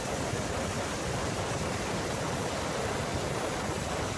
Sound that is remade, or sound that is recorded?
recorded